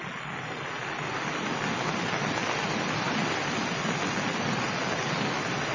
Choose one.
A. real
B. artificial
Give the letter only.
A